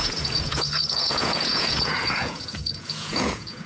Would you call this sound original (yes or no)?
no